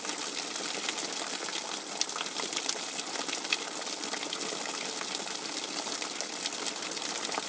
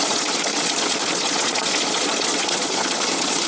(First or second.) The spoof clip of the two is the second